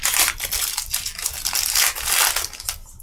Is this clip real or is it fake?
real